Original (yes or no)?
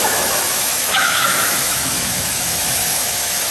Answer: no